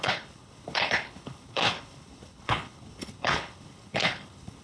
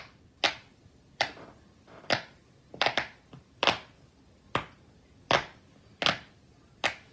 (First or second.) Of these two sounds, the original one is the second